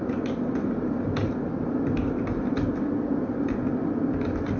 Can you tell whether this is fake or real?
real